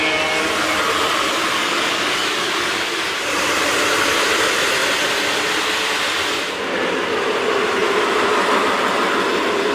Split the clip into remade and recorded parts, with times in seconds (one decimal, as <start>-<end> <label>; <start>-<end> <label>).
0.0-1.5 recorded; 1.5-3.0 remade; 3.0-9.7 recorded